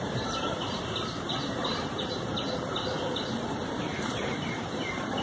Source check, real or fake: fake